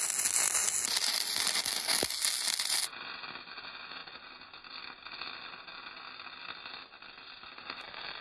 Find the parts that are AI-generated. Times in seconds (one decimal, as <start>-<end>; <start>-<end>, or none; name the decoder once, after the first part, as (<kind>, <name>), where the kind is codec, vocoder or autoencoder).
none